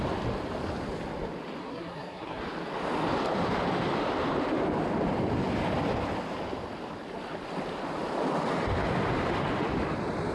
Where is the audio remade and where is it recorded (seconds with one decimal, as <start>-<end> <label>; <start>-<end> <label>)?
0.0-1.6 recorded; 1.6-2.4 remade; 2.4-10.3 recorded